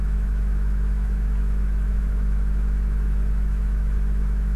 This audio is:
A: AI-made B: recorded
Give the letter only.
A